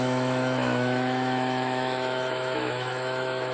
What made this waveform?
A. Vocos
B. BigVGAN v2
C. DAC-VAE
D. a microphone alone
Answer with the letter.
C